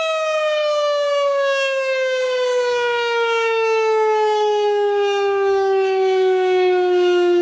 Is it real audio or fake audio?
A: fake